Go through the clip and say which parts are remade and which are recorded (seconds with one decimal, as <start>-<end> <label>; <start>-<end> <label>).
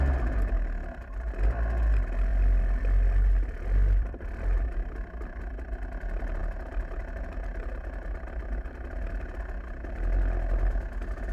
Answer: 0.0-2.3 recorded; 2.3-5.4 remade; 5.4-11.3 recorded